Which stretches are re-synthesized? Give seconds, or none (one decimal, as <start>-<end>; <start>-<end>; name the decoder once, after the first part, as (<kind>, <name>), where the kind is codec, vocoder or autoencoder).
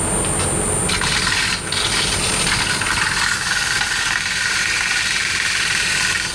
none